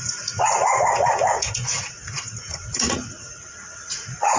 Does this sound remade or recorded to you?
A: remade